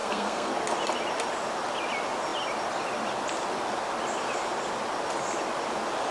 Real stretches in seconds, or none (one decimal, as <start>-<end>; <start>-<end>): 0.5-6.1